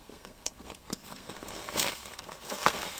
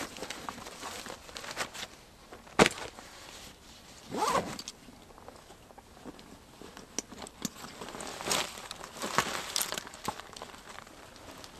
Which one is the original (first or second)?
second